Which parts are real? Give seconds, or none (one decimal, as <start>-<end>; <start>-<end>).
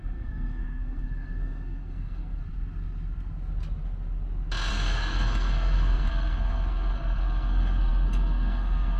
2.4-4.7